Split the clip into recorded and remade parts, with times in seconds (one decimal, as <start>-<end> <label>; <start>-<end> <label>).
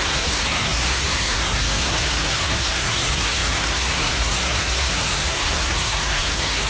0.0-6.7 remade